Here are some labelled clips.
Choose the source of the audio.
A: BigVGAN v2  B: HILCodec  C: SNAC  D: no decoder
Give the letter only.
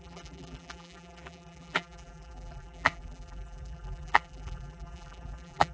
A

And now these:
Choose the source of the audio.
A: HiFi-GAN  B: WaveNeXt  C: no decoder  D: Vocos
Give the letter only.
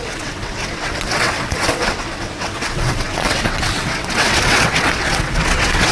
B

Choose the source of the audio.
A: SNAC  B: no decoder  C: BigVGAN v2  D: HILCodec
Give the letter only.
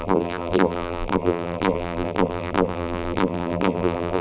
C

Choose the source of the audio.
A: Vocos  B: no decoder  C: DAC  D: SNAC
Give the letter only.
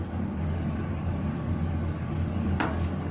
C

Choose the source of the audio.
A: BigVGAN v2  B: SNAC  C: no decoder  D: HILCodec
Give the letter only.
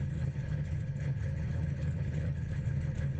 D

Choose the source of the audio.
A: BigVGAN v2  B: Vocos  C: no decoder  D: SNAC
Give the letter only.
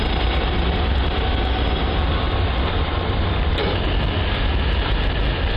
A